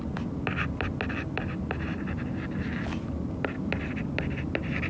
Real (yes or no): yes